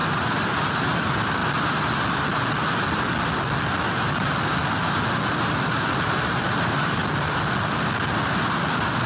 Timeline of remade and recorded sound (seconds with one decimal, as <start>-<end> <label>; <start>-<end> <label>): 0.0-0.6 recorded; 0.6-1.4 remade; 1.4-5.7 recorded; 5.7-7.0 remade; 7.0-8.6 recorded; 8.6-9.1 remade